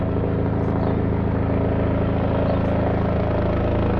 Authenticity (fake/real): real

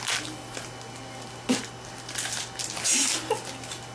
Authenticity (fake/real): real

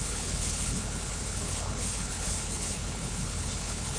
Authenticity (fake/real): fake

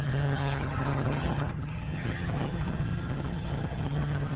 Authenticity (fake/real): fake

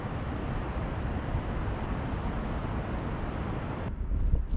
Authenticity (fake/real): real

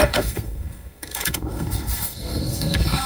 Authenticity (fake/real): fake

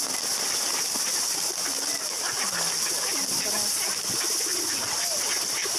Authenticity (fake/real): real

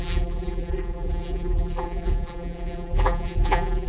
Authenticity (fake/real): fake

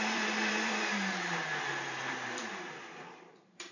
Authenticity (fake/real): fake